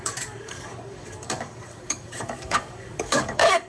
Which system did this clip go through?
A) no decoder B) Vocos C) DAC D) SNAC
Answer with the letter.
C